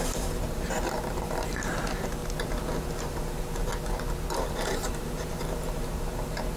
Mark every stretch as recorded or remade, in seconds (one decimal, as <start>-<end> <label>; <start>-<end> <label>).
0.0-2.2 remade; 2.2-2.8 recorded; 2.8-3.7 remade; 3.7-4.3 recorded; 4.3-6.6 remade